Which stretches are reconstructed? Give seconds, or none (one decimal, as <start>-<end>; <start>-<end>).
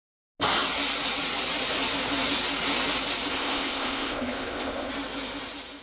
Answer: 3.3-4.9